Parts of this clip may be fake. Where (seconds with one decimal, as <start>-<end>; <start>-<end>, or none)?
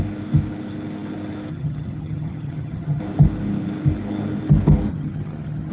1.5-3.0; 4.9-5.7